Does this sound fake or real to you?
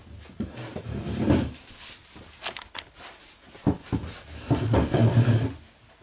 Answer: real